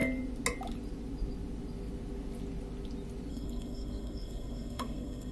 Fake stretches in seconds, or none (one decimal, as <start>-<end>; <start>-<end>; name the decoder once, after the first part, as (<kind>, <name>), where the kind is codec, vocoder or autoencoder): 3.3-5.3 (codec, SNAC)